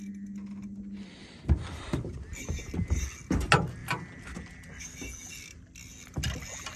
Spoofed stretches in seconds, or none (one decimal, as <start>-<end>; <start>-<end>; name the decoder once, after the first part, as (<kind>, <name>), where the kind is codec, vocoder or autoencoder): 1.2-3.0 (vocoder, BigVGAN v2); 3.8-4.8